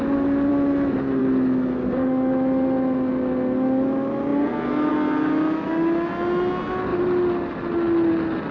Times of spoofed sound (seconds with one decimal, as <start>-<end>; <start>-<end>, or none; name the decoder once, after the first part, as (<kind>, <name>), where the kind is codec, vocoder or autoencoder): none